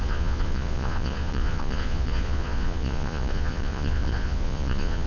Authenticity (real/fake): fake